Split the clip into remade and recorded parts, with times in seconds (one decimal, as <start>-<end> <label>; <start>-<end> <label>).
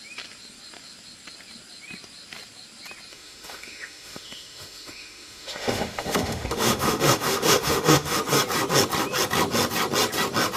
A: 0.0-3.1 recorded; 3.1-8.2 remade; 8.2-10.6 recorded